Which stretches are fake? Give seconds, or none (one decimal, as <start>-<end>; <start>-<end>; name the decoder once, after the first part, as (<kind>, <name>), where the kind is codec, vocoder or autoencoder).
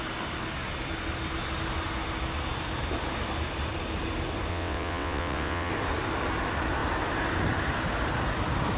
4.5-5.7 (vocoder, WaveNeXt)